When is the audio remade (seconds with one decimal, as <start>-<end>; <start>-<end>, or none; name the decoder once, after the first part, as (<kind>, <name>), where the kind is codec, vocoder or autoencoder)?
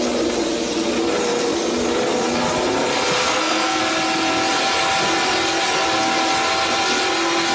3.2-3.8 (codec, SNAC)